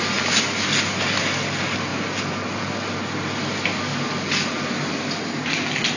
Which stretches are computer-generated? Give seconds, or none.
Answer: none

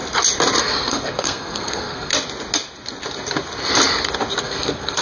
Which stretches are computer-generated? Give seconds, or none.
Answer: 0.6-2.1; 4.4-5.0

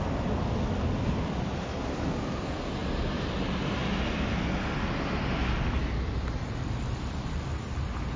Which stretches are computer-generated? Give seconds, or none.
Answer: none

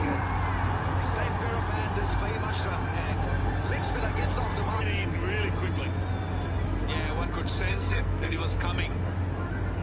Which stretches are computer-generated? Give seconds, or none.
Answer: 7.7-8.4

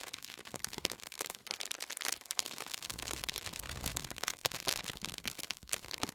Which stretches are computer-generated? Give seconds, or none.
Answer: 0.0-1.4; 2.2-6.1

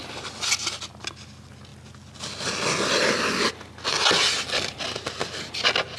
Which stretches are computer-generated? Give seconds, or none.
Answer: none

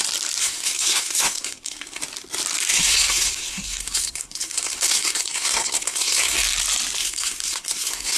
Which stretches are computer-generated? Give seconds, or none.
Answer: 0.4-2.0; 2.7-6.4; 7.0-8.2